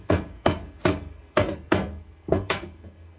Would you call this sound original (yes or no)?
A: no